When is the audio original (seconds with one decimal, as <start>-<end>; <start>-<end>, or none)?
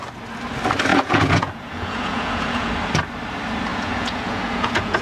0.0-0.9; 2.7-3.7